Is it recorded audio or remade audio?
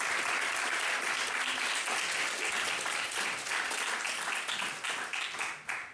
recorded